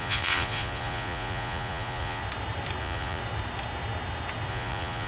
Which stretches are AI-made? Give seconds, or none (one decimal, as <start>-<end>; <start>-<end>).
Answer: 0.0-2.2; 2.8-3.2; 4.5-5.1